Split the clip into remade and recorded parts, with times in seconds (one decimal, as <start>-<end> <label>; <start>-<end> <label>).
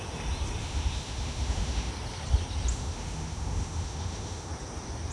0.0-0.6 recorded; 0.6-1.9 remade; 1.9-2.7 recorded; 2.7-4.5 remade; 4.5-5.1 recorded